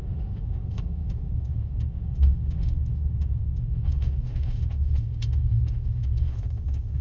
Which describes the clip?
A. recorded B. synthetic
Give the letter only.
B